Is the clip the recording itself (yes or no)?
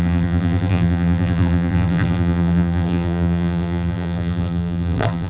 no